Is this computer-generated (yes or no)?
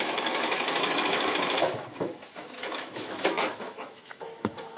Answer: yes